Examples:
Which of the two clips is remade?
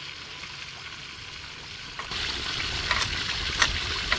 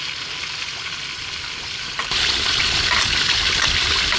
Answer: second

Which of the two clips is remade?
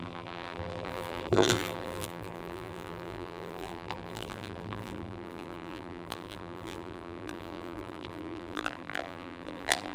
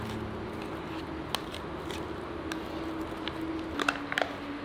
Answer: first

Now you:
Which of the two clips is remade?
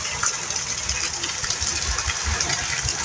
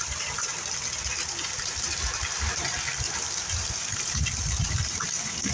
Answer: second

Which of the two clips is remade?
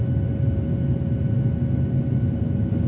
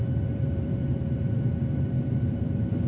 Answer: second